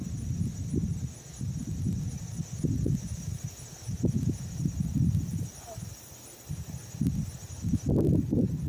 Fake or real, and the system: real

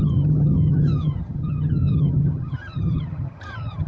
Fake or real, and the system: fake, vocoder, HiFi-GAN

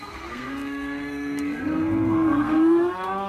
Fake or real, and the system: fake, codec, SNAC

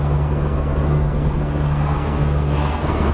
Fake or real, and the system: fake, codec, SNAC